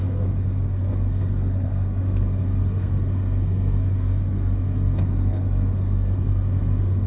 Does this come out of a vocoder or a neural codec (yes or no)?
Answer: yes